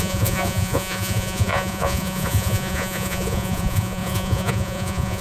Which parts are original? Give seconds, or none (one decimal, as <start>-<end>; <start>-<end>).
none